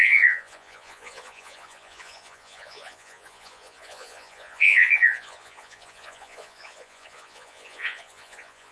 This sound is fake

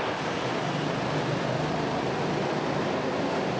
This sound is real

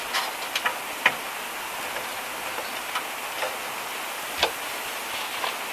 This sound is real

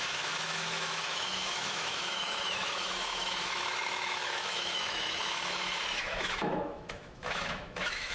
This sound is fake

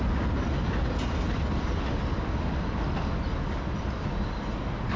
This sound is real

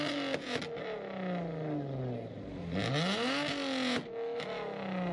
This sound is real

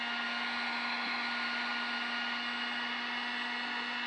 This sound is real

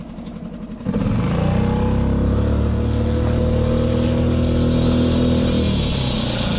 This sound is real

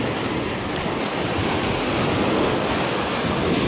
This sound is real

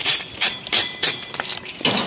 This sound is real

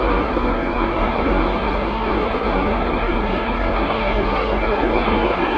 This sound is fake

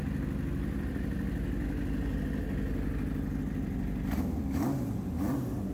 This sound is real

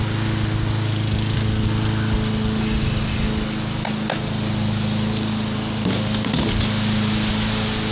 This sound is real